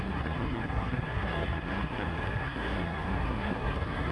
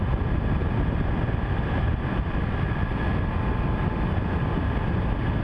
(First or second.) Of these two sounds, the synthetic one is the first